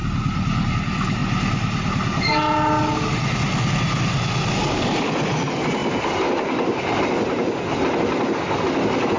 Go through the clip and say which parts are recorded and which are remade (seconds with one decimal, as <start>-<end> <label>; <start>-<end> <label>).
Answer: 0.0-4.6 recorded; 4.6-5.1 remade; 5.1-9.2 recorded